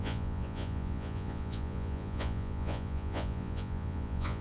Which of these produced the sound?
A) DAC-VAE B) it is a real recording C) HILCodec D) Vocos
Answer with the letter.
D